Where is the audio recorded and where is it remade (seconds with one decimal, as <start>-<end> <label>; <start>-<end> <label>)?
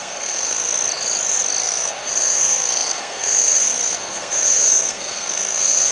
0.0-0.7 remade; 0.7-1.6 recorded; 1.6-5.9 remade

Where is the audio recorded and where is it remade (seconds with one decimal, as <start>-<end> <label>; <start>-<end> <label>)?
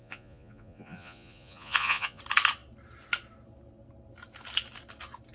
0.0-2.2 remade; 2.2-5.3 recorded